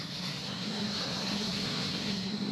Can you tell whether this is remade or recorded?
remade